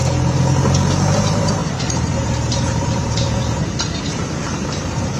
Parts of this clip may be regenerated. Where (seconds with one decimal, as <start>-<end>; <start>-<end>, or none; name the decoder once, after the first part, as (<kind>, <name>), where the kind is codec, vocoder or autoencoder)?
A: 1.2-5.2 (vocoder, BigVGAN v2)